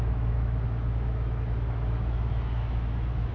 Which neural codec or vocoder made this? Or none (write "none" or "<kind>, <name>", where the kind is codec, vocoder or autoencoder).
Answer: autoencoder, DAC-VAE